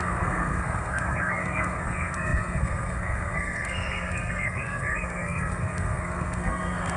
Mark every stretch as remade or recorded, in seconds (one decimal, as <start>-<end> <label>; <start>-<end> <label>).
0.0-7.0 remade